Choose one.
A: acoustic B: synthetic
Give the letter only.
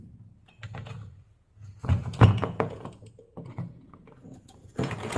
B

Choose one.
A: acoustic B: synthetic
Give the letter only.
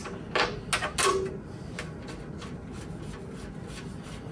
A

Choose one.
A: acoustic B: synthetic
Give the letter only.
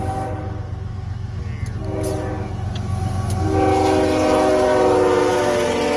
A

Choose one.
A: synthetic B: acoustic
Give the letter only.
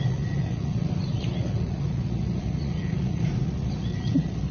A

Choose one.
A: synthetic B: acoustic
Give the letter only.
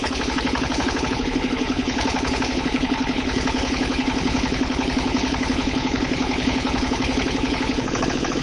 A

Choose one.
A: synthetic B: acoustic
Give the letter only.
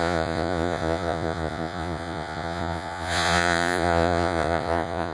A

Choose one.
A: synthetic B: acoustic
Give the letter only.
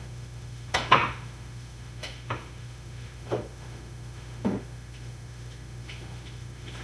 A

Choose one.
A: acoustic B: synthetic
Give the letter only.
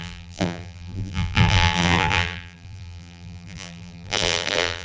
B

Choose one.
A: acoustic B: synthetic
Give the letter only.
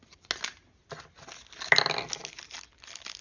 A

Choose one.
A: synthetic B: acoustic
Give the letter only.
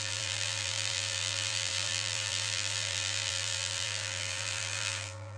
A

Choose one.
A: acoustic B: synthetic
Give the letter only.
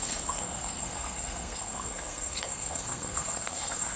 B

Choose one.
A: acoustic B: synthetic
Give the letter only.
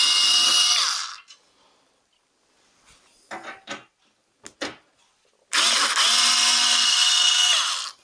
A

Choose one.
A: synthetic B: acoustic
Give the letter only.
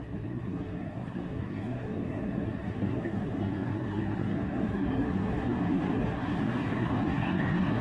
A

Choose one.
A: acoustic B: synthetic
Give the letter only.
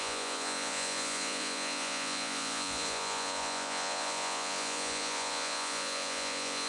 B